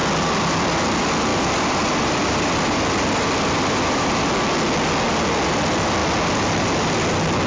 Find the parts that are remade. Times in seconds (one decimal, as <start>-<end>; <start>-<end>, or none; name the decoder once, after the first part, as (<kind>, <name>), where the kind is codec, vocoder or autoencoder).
1.3-4.3 (vocoder, BigVGAN v2)